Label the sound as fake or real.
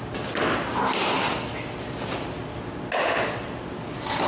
real